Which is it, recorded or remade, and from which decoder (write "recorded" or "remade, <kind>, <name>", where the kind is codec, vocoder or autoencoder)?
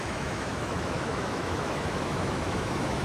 remade, autoencoder, DAC-VAE